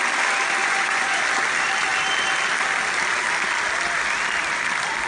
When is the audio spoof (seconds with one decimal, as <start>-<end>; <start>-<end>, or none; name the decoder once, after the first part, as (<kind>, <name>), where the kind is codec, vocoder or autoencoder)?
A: 0.6-1.2 (vocoder, Vocos)